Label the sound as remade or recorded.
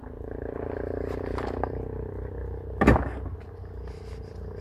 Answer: recorded